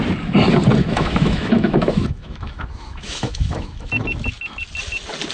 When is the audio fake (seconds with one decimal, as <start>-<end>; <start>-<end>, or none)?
0.8-4.0